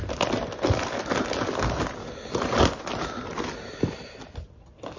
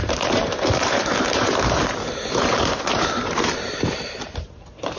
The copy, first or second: second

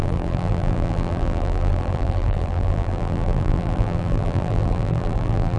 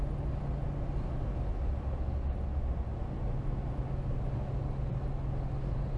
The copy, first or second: first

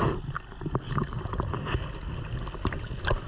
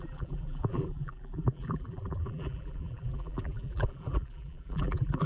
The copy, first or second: second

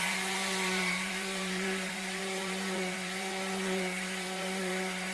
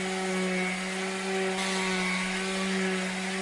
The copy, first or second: first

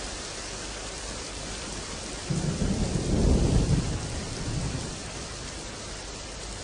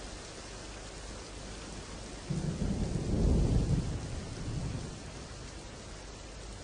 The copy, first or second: first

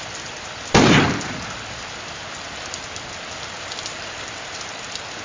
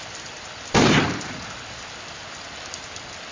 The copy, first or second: second